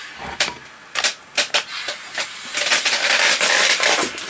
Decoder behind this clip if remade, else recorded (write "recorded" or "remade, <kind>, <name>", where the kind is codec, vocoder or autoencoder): recorded